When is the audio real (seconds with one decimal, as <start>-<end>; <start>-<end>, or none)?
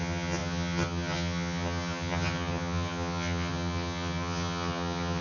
none